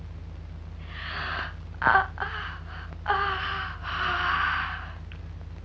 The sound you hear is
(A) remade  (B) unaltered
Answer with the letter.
B